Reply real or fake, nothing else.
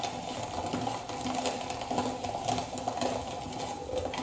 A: real